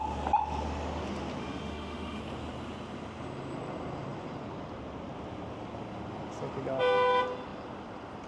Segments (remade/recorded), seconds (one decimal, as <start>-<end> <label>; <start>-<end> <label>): 0.0-1.4 recorded; 1.4-2.2 remade; 2.2-8.3 recorded